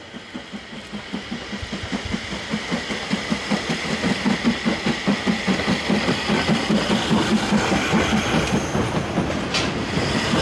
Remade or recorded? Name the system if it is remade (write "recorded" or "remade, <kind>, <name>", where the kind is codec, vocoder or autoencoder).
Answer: recorded